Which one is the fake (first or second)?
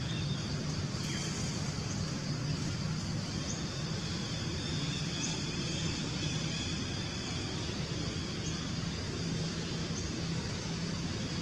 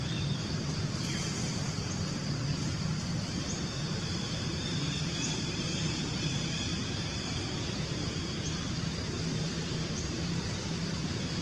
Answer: second